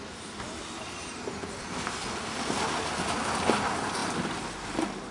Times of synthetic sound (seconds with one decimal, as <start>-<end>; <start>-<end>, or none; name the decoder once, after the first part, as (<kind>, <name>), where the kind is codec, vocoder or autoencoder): none